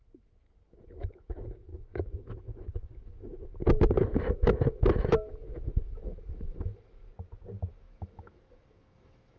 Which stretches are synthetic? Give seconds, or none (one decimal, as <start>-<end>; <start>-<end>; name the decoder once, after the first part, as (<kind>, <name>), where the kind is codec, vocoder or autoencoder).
0.0-7.1 (autoencoder, DAC-VAE); 7.7-9.4